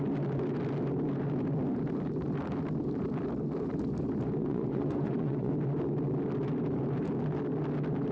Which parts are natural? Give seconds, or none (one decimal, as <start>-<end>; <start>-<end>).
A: 0.0-4.4; 5.5-8.1